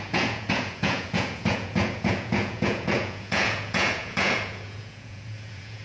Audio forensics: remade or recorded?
remade